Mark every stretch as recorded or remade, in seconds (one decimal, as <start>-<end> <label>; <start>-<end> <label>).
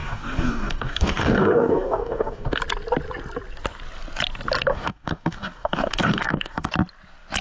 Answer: 0.0-2.6 remade; 2.6-4.7 recorded; 4.7-6.7 remade; 6.7-7.4 recorded